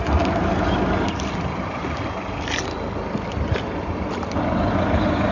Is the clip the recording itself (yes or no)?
yes